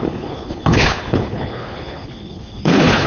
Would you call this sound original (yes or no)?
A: no